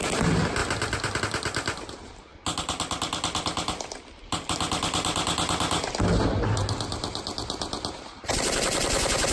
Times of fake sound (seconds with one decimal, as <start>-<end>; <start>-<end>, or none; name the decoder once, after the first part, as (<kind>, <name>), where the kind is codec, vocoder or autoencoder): none